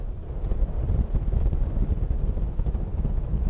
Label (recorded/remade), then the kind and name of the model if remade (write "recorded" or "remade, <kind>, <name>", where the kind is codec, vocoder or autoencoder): recorded